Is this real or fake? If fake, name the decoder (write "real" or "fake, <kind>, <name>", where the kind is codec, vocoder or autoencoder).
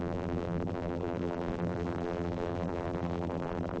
fake, vocoder, BigVGAN v2